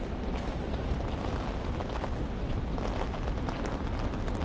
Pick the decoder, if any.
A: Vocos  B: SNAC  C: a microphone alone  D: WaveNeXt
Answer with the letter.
C